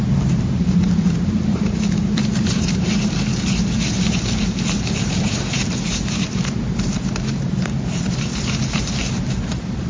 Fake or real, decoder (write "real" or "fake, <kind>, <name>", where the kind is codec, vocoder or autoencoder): fake, vocoder, BigVGAN v2